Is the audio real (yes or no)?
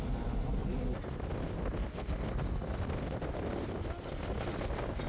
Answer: yes